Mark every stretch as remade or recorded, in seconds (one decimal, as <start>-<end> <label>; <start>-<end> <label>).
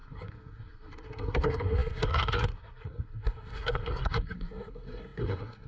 0.0-5.7 remade